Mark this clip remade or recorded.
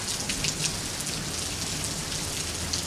recorded